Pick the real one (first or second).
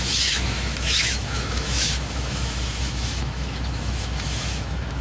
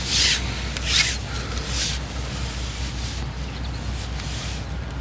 second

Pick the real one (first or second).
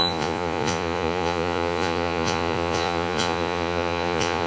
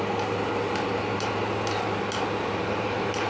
second